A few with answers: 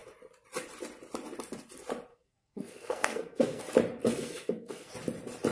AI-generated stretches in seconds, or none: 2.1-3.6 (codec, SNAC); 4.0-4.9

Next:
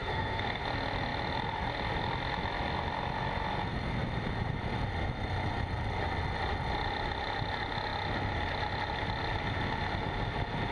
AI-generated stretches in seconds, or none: 0.0-0.6 (codec, SNAC)

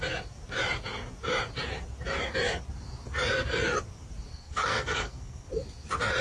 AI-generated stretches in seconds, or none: 4.3-5.5 (codec, SNAC)

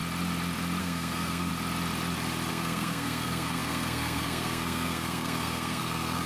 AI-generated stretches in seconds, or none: 0.8-1.5 (codec, SNAC); 2.5-6.3

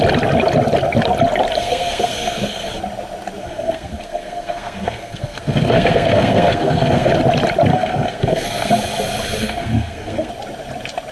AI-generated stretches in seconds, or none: 1.6-2.7 (codec, SNAC); 3.4-7.1; 7.7-8.7; 9.4-10.3